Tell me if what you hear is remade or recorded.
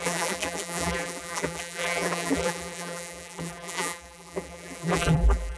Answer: remade